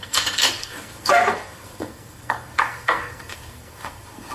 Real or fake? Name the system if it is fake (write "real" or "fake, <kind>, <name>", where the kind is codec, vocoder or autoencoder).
fake, codec, SNAC